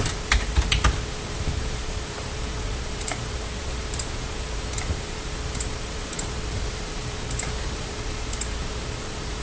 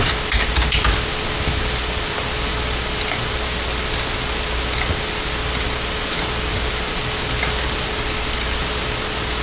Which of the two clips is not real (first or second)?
first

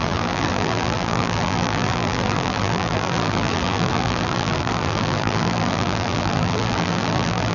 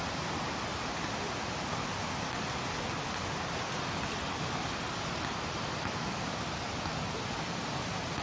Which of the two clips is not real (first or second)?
first